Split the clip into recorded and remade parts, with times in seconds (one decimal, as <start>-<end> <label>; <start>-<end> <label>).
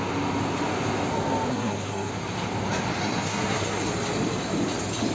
0.0-1.5 recorded; 1.5-2.1 remade; 2.1-3.0 recorded; 3.0-3.9 remade; 3.9-5.1 recorded